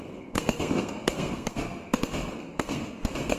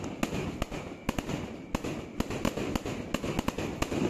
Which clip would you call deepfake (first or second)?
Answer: first